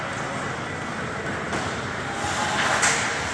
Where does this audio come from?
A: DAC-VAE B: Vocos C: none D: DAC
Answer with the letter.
C